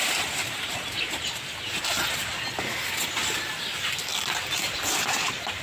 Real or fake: real